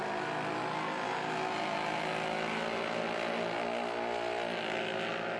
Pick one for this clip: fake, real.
real